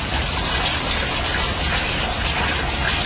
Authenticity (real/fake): real